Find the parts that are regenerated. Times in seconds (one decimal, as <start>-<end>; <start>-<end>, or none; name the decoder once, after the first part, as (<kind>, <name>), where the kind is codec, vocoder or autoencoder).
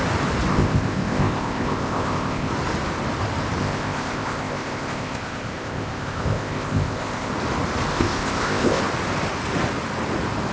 0.5-2.5 (codec, ZipCodec); 3.6-7.3; 7.9-8.8